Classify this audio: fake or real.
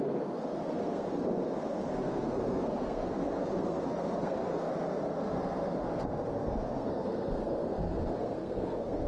fake